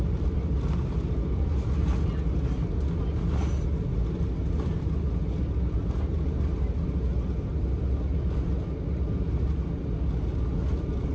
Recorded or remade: recorded